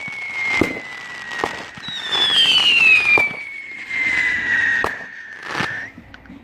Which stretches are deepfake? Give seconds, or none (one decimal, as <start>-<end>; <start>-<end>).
2.8-5.4